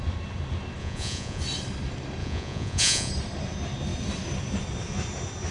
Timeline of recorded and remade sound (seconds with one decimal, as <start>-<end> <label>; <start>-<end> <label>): 0.0-0.8 recorded; 0.8-1.4 remade; 1.4-2.2 recorded; 2.2-3.1 remade; 3.1-5.5 recorded